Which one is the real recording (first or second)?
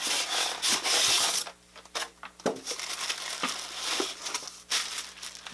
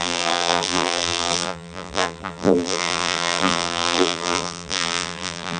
first